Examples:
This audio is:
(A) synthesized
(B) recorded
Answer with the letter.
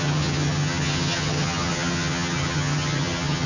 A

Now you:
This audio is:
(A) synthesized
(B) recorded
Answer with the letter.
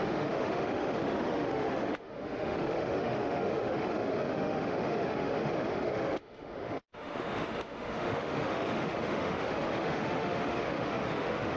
A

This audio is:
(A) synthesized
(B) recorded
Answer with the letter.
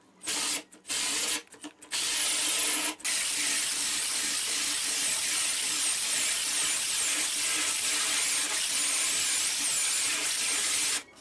B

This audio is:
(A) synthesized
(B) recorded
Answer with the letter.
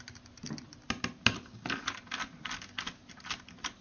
B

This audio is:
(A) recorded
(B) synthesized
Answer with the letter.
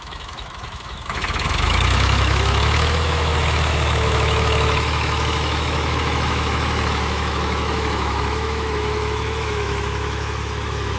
B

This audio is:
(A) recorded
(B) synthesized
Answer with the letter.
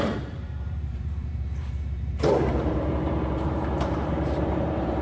B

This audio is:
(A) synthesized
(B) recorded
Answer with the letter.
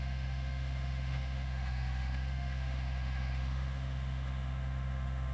A